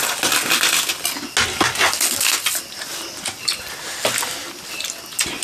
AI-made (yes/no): no